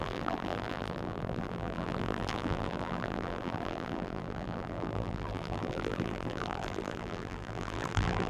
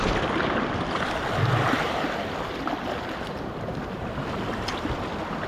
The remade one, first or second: first